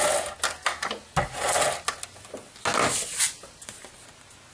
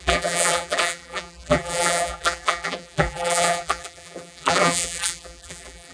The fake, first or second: second